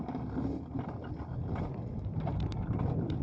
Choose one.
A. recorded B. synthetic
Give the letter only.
A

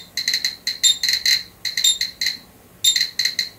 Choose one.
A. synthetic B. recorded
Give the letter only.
B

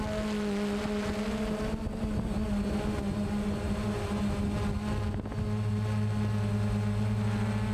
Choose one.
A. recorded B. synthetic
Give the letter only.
A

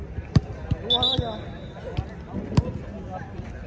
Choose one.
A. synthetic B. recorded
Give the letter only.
B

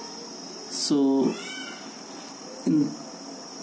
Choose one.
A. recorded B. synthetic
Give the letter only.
A